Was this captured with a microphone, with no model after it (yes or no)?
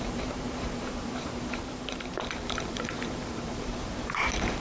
no